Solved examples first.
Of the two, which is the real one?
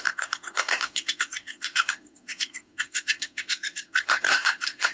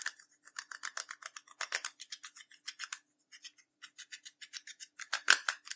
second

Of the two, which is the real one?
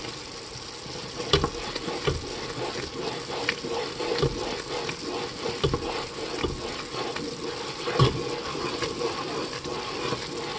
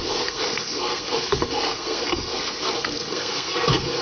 first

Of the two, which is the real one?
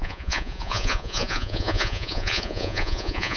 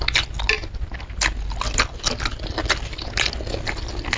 second